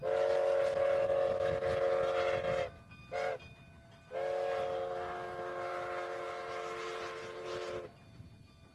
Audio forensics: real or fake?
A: real